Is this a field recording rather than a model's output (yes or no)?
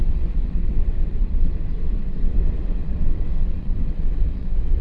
no